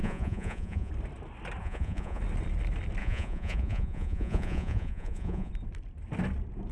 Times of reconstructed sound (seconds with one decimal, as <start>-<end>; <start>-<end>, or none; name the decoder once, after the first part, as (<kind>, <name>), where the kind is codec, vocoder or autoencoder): 0.0-0.9 (vocoder, Vocos); 1.6-2.2; 3.0-5.5